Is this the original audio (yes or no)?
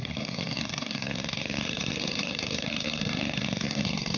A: no